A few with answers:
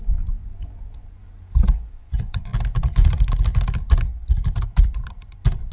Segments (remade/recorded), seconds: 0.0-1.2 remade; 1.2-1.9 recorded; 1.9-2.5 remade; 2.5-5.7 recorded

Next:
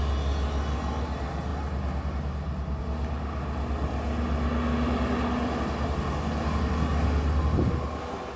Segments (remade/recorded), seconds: 0.0-8.4 recorded

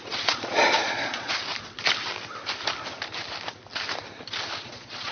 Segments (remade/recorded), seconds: 0.0-1.5 remade; 1.5-4.6 recorded; 4.6-5.1 remade

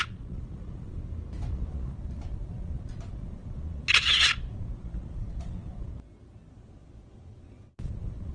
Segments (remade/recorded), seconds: 0.0-1.0 remade; 1.0-1.5 recorded; 1.5-5.9 remade; 5.9-6.5 recorded; 6.5-8.3 remade

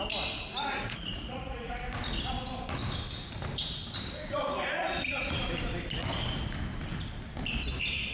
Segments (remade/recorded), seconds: 0.0-0.6 recorded; 0.6-1.7 remade; 1.7-4.3 recorded; 4.3-5.4 remade; 5.4-8.1 recorded

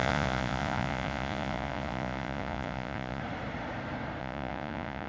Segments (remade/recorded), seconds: 0.0-3.2 remade; 3.2-4.2 recorded; 4.2-5.1 remade